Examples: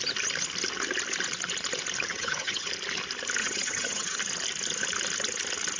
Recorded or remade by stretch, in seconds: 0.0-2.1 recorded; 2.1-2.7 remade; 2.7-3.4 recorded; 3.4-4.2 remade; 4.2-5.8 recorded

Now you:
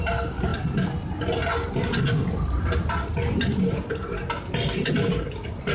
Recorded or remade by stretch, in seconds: 0.0-5.7 recorded

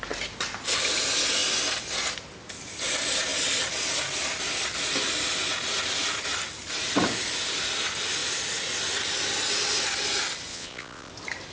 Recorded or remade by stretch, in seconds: 0.0-10.5 recorded; 10.5-11.1 remade; 11.1-11.5 recorded

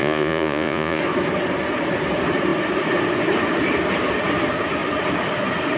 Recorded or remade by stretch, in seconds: 0.0-1.0 remade; 1.0-5.8 recorded

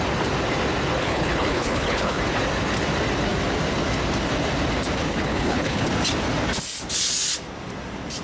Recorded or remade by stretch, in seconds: 0.0-1.0 recorded; 1.0-2.2 remade; 2.2-5.1 recorded; 5.1-5.9 remade; 5.9-8.2 recorded

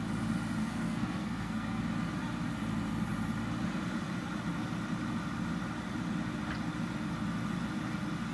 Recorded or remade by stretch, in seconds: 0.0-0.6 recorded; 0.6-1.8 remade; 1.8-8.3 recorded

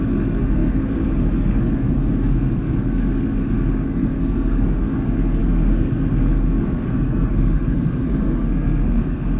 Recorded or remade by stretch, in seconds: 0.0-9.4 remade